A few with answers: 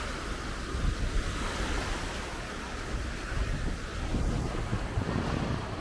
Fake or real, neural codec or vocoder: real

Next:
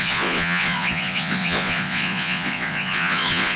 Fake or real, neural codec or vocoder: fake, vocoder, Vocos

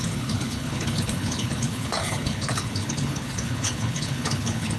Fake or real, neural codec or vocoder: fake, codec, HILCodec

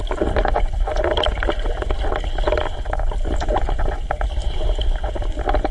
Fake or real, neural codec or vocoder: real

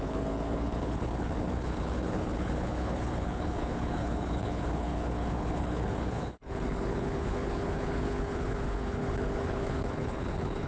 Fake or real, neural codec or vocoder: fake, codec, HILCodec